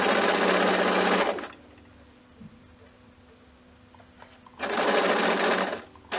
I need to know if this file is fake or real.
real